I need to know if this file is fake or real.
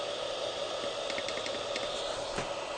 real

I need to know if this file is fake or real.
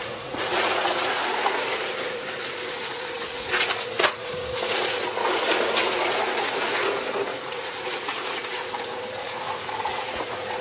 fake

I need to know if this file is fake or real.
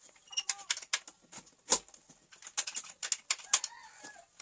real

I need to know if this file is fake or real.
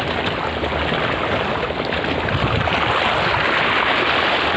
real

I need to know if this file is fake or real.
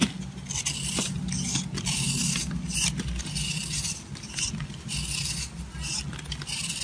real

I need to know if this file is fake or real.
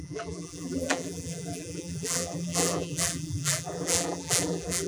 fake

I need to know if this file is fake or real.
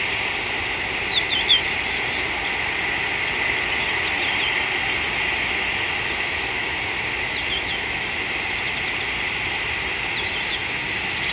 real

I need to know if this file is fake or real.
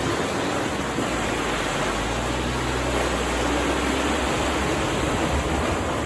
real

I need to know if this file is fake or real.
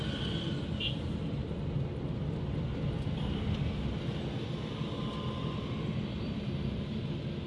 real